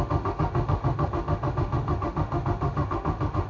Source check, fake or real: fake